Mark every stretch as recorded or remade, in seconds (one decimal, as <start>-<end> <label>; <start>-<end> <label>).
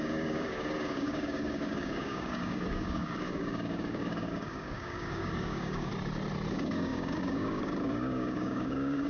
0.0-5.9 remade; 5.9-6.5 recorded; 6.5-9.1 remade